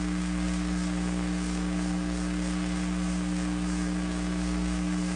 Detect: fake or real fake